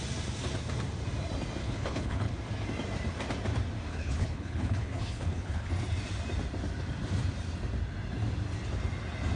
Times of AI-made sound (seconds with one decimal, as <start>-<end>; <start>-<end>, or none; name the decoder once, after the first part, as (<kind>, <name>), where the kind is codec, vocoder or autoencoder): 1.6-2.3 (codec, HILCodec); 3.9-5.7